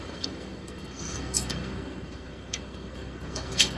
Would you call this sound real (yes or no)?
no